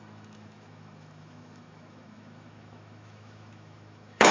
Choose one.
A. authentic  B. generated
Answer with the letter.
B